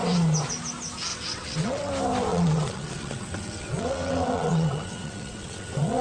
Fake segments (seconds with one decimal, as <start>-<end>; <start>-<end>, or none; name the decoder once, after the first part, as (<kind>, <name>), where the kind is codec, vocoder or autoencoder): 1.1-1.9 (vocoder, WaveNeXt); 2.3-6.0